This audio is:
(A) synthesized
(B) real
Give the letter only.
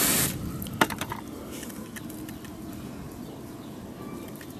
B